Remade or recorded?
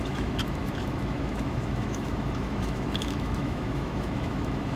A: remade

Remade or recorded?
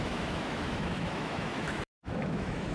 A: remade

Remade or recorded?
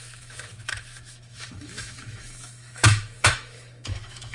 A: remade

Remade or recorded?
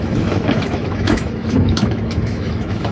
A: remade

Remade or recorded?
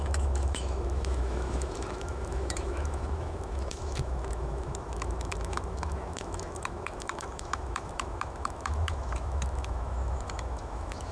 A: remade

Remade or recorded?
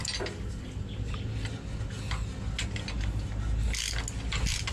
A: recorded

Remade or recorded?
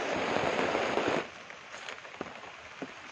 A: recorded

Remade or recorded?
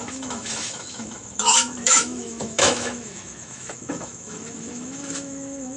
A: remade